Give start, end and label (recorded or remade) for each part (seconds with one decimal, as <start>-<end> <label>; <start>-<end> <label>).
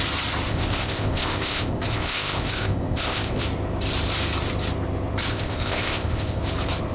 0.0-0.5 recorded; 0.5-3.4 remade; 3.4-5.3 recorded; 5.3-6.4 remade; 6.4-6.9 recorded